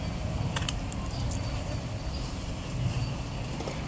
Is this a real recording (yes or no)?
yes